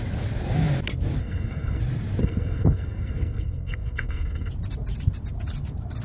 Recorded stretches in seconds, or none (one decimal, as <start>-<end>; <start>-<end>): 0.0-1.2; 1.8-2.2; 4.5-6.0